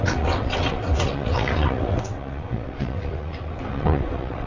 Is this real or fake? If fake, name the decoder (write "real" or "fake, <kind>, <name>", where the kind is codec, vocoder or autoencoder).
fake, vocoder, WaveNeXt